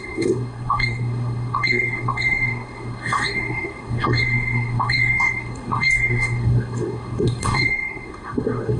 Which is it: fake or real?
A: fake